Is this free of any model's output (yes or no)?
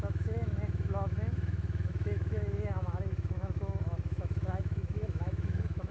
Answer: no